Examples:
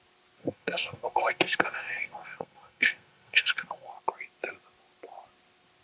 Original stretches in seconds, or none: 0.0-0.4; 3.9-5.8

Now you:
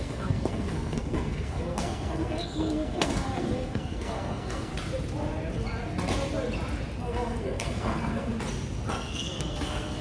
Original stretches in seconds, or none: 4.7-7.0; 8.3-8.9

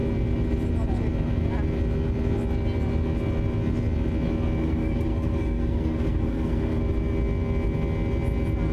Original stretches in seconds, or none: 0.0-4.6; 6.8-8.7

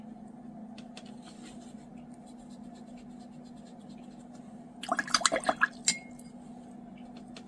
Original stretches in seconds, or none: 0.0-7.5